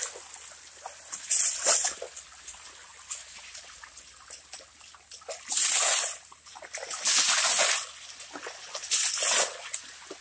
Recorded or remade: recorded